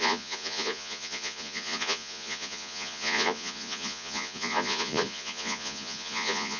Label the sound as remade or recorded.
remade